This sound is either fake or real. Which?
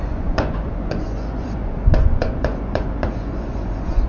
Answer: fake